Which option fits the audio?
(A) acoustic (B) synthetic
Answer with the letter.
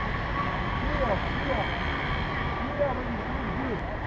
A